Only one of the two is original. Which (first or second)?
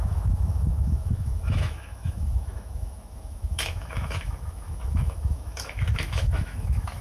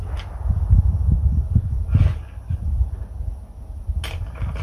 second